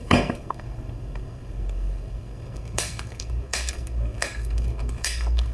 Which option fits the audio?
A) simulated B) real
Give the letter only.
A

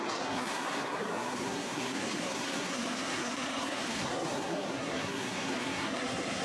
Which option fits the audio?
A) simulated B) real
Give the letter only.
A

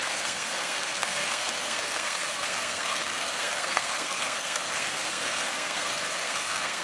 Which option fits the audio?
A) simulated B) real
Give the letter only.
A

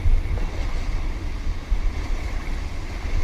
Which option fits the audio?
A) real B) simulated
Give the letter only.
A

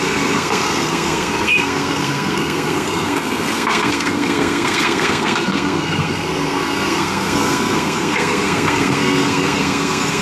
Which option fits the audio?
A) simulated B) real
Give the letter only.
A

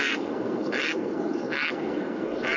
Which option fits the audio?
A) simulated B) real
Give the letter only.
A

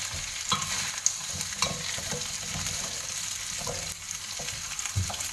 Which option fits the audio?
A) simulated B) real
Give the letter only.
B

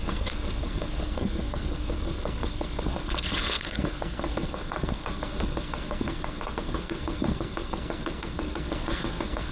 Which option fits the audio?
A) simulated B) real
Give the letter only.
A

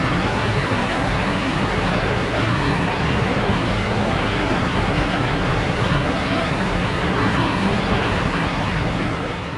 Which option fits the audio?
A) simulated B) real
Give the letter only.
A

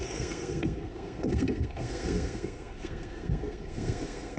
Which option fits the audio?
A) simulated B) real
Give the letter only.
A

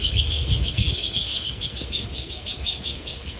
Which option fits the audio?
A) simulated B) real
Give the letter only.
A